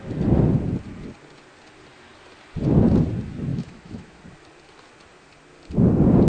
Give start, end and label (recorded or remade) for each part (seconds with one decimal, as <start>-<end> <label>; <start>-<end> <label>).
0.0-3.5 recorded; 3.5-4.2 remade; 4.2-6.3 recorded